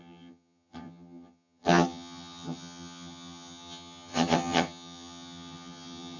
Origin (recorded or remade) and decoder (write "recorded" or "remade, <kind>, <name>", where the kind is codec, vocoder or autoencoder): remade, vocoder, HiFi-GAN